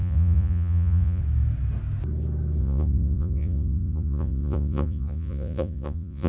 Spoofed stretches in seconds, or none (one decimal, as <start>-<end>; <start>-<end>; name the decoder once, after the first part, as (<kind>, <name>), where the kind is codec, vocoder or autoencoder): 0.0-1.2 (vocoder, Vocos); 2.6-6.3